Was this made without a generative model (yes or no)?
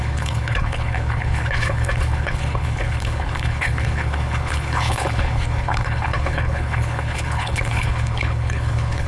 no